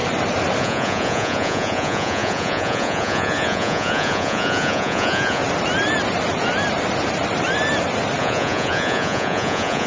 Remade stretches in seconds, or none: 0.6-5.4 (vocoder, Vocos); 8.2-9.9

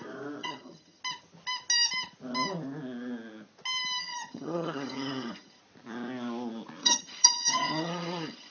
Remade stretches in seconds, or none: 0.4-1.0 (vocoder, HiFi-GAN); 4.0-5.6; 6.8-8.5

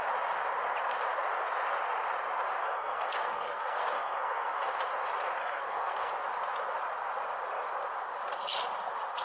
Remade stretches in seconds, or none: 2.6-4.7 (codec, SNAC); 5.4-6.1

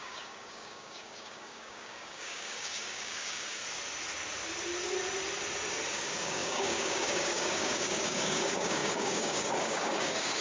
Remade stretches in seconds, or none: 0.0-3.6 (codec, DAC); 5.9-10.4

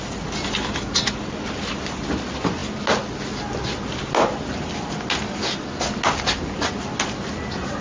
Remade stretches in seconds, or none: none

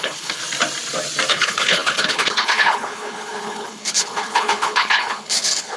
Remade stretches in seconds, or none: 0.0-0.4 (codec, HILCodec); 1.3-5.8

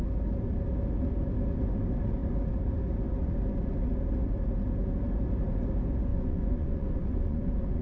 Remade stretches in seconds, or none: 6.1-7.8 (vocoder, Vocos)

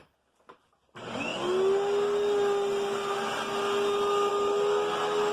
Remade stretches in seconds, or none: none